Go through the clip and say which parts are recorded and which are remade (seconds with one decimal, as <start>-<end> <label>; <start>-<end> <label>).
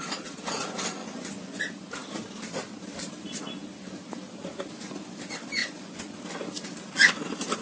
0.0-1.0 recorded; 1.0-1.6 remade; 1.6-5.6 recorded; 5.6-6.2 remade; 6.2-7.6 recorded